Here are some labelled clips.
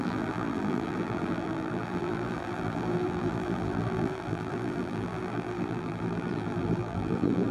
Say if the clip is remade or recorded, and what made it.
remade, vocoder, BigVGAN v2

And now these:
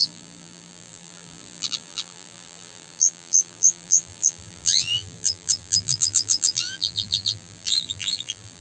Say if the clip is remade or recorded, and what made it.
remade, vocoder, BigVGAN v2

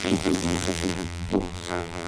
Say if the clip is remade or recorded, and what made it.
remade, vocoder, BigVGAN v2